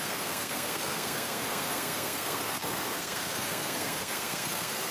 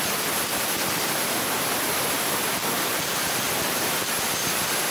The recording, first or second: second